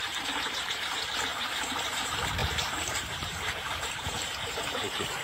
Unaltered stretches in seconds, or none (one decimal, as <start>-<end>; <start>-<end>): none